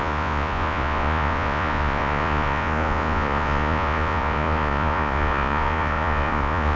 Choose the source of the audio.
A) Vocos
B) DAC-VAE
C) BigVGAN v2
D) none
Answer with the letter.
A